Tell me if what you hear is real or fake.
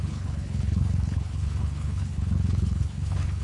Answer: fake